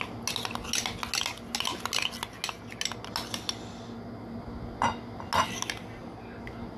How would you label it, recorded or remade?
recorded